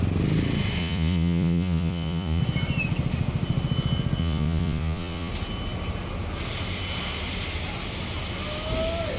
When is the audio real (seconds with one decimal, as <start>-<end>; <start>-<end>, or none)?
0.0-0.8; 2.4-4.2; 5.3-9.2